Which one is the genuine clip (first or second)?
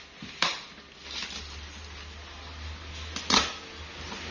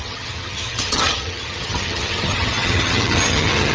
first